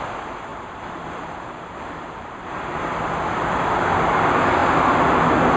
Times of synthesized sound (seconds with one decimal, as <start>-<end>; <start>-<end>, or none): 0.5-3.1